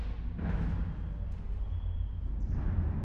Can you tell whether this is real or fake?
real